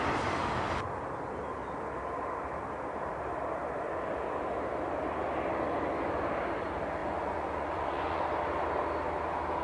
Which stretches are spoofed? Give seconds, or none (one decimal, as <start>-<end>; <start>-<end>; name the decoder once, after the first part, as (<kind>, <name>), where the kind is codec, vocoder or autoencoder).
7.0-8.2 (vocoder, Vocos)